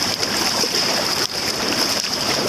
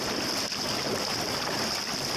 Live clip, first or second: second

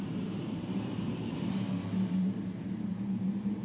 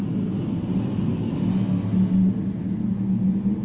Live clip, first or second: second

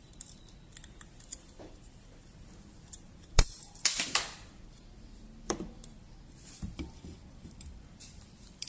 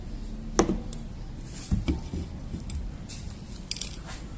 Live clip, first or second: second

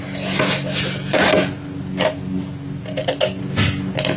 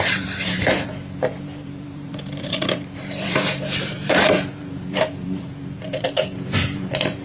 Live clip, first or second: first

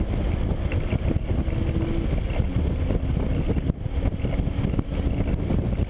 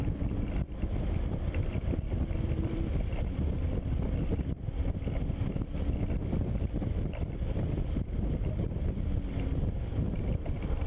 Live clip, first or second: first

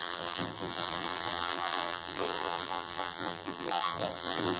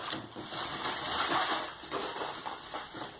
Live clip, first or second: second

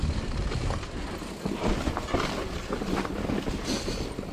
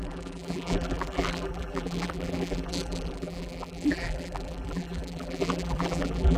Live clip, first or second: first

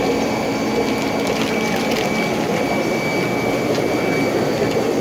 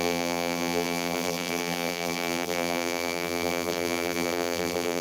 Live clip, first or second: first